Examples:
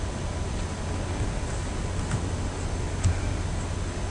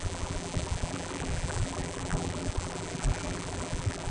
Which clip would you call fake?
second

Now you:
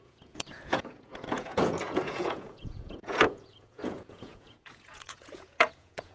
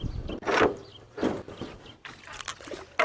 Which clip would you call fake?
first